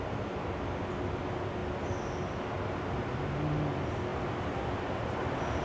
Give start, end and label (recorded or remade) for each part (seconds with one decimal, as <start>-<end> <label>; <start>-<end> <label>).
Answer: 0.0-5.6 recorded